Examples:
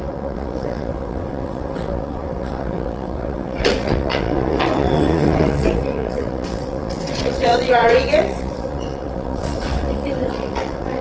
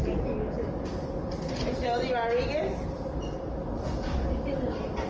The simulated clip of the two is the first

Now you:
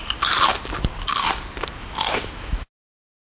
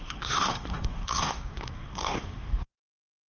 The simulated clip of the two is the second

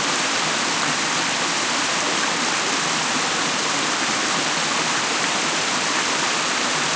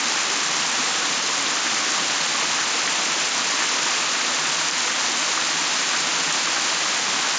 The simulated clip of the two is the first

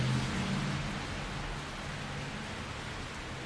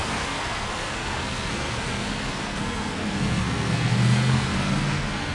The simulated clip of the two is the second